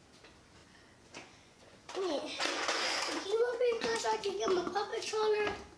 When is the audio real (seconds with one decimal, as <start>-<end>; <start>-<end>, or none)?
0.0-0.6; 4.0-5.8